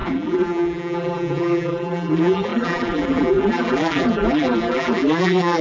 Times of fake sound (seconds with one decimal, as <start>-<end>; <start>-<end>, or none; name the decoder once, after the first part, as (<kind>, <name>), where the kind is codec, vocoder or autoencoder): 0.0-5.6 (vocoder, BigVGAN v2)